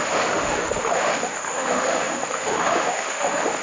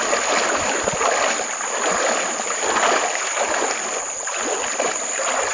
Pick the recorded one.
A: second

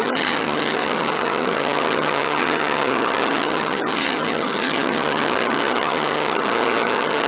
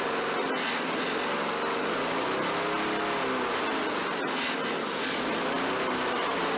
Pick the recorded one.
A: second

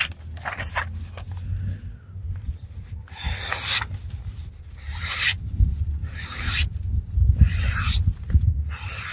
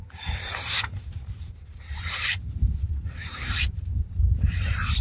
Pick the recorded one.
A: first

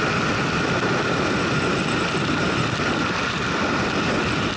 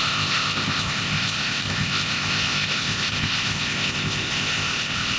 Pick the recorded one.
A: first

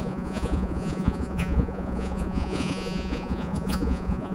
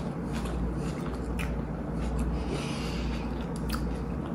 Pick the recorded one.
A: second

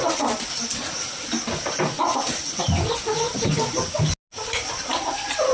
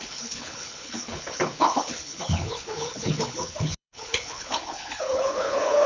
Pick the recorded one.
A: first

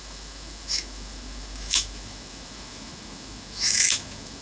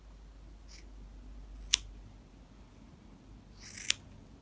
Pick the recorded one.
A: second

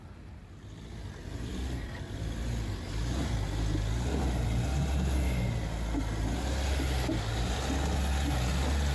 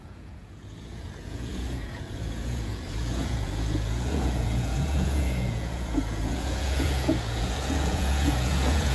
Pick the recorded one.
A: first